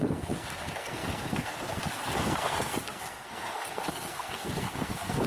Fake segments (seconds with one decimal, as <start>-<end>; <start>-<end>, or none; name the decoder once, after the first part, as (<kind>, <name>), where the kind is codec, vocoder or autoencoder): 0.0-5.3 (codec, SNAC)

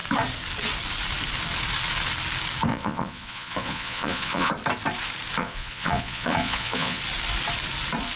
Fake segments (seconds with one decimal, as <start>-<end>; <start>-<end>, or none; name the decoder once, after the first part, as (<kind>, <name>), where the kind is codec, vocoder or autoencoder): 2.7-4.5 (vocoder, Vocos); 5.4-7.0

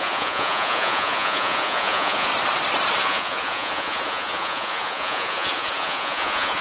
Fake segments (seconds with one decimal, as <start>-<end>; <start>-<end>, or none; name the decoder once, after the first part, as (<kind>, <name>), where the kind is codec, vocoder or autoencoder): 0.0-2.3 (vocoder, Vocos); 3.0-6.6

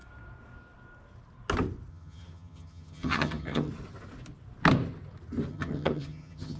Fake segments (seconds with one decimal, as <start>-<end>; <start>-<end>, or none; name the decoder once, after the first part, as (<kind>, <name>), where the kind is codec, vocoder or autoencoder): 1.9-3.7 (vocoder, HiFi-GAN); 5.5-6.6

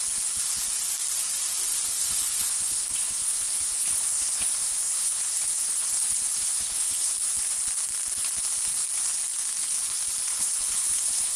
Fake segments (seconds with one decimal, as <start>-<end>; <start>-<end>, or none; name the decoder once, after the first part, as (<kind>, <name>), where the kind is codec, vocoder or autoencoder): 2.0-7.1 (codec, HILCodec); 10.3-11.4

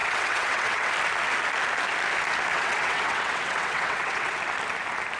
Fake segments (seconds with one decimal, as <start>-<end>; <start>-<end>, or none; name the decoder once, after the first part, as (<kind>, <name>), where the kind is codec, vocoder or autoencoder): 0.0-0.9 (vocoder, WaveNeXt); 2.5-4.4

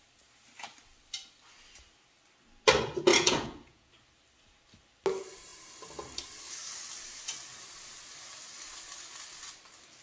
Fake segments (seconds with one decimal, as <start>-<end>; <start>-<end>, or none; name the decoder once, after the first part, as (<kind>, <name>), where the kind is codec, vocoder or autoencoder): 3.1-3.9 (vocoder, Vocos)